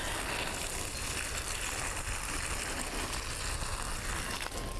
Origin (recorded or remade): recorded